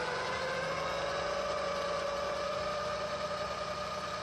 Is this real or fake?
fake